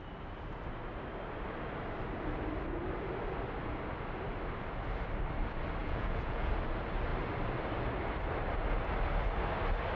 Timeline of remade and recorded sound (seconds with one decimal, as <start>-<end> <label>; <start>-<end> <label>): 0.0-5.8 recorded; 5.8-6.5 remade; 6.5-10.0 recorded

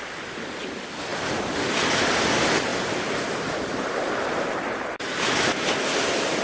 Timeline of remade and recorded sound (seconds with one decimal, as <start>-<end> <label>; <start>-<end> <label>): 0.0-1.1 remade; 1.1-1.6 recorded; 1.6-2.7 remade; 2.7-3.5 recorded; 3.5-6.4 remade

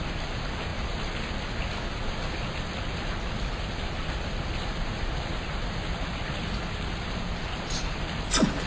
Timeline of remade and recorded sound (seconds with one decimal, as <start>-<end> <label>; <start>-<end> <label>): 0.0-8.7 recorded

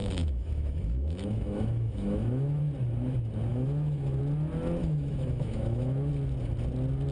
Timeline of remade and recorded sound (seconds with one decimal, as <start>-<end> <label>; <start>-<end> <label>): 0.0-2.6 remade; 2.6-3.5 recorded; 3.5-4.2 remade; 4.2-4.8 recorded; 4.8-6.1 remade; 6.1-7.1 recorded

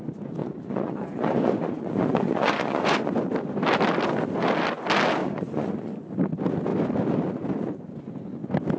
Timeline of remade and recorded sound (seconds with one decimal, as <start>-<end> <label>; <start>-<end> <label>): 0.0-0.4 recorded; 0.4-3.1 remade; 3.1-5.2 recorded; 5.2-5.9 remade; 5.9-8.8 recorded

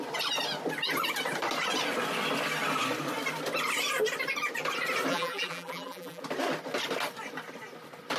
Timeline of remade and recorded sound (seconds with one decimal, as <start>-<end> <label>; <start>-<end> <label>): 0.0-5.1 recorded; 5.1-6.2 remade; 6.2-8.2 recorded

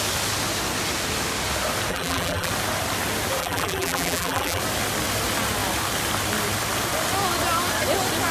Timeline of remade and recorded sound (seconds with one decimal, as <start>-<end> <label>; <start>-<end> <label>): 0.0-1.9 recorded; 1.9-2.5 remade; 2.5-3.4 recorded; 3.4-4.6 remade; 4.6-8.3 recorded